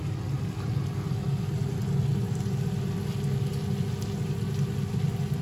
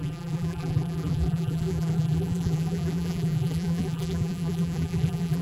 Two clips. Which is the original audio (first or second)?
first